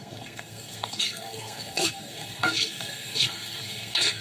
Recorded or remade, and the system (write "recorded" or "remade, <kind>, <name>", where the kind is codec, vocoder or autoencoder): remade, codec, SNAC